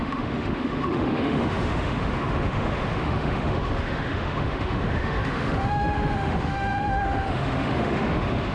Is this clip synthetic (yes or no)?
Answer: yes